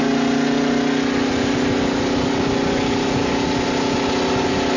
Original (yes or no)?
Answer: yes